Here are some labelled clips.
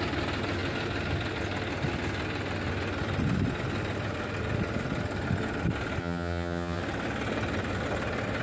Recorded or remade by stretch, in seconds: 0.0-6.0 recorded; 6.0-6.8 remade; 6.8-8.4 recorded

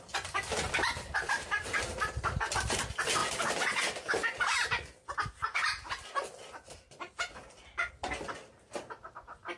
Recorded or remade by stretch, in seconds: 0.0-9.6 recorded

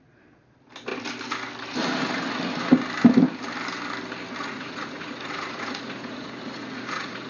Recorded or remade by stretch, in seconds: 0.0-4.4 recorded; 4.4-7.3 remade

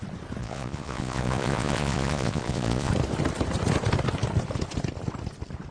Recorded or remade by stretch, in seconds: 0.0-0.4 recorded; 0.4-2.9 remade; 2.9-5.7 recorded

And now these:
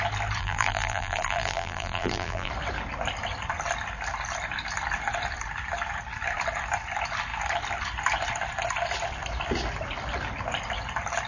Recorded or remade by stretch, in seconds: 0.0-0.4 recorded; 0.4-2.5 remade; 2.5-11.3 recorded

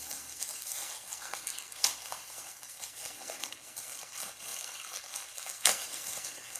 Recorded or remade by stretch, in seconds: 0.0-6.6 remade

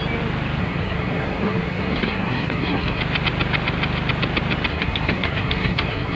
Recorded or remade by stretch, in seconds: 0.0-0.6 recorded; 0.6-3.0 remade; 3.0-4.7 recorded; 4.7-6.2 remade

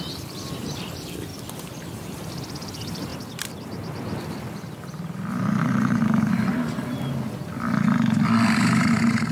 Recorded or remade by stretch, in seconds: 0.0-3.1 remade; 3.1-6.3 recorded; 6.3-9.3 remade